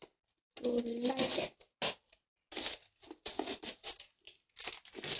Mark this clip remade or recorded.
recorded